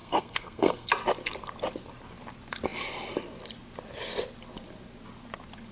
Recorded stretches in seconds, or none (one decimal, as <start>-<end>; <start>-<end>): 0.9-5.7